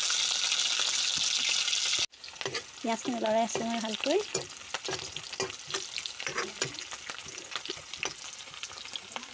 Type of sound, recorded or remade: recorded